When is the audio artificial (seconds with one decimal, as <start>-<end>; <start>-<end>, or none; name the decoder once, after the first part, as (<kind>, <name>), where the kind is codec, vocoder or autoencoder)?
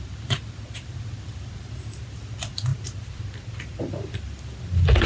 2.7-3.8 (vocoder, BigVGAN v2)